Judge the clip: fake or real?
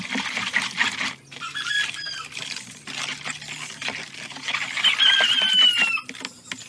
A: real